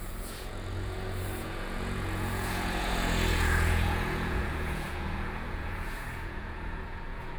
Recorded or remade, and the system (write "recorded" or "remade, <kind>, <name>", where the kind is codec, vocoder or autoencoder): remade, vocoder, Vocos